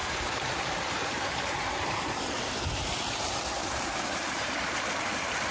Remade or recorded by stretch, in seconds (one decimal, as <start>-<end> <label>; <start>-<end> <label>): 0.0-2.5 remade; 2.5-3.6 recorded; 3.6-5.0 remade; 5.0-5.5 recorded